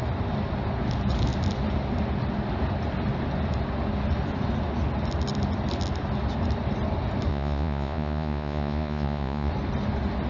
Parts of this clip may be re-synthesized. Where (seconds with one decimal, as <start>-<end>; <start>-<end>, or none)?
7.3-9.5